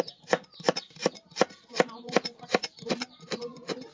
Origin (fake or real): real